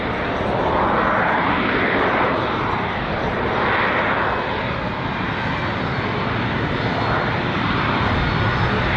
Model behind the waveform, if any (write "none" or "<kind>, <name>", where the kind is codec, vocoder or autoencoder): none